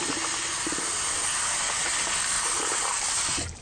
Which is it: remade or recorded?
recorded